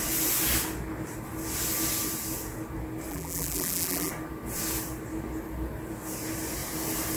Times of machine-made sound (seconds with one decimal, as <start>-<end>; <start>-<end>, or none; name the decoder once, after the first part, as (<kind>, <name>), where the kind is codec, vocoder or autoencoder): 3.1-4.1 (vocoder, BigVGAN v2)